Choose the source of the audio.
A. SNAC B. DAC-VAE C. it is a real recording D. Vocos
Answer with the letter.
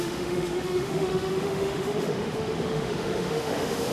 B